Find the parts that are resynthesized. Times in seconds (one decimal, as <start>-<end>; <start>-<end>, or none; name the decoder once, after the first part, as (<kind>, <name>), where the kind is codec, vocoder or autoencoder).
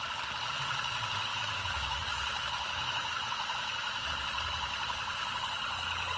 1.3-4.1 (autoencoder, DAC-VAE)